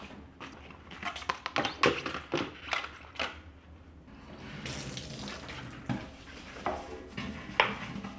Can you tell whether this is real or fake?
real